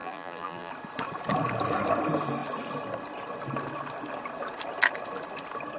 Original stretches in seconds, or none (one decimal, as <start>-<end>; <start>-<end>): 0.7-5.8